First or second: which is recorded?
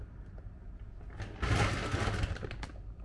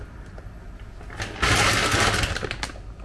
second